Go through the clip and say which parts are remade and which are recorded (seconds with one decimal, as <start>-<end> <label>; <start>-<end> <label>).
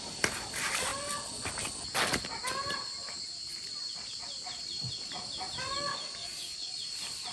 0.0-5.9 recorded; 5.9-6.7 remade; 6.7-7.3 recorded